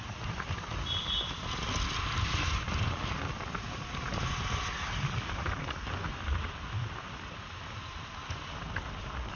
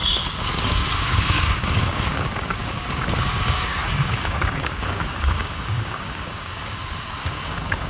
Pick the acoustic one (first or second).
first